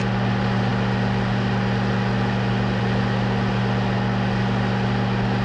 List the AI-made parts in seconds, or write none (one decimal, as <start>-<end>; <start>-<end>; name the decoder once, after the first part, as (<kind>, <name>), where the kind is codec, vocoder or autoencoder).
none